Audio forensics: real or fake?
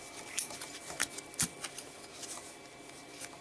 real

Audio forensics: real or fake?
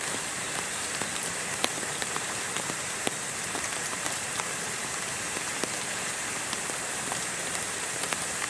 fake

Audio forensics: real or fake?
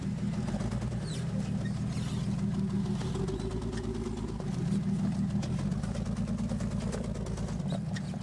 real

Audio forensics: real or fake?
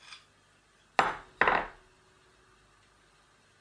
real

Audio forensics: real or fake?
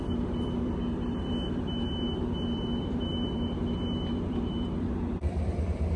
fake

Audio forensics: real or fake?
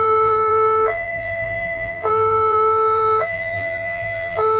fake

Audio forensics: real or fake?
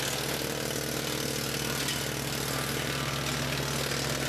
real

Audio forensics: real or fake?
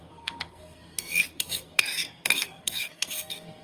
fake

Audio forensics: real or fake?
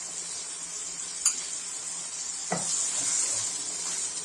real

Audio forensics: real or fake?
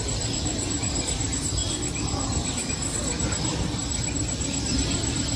real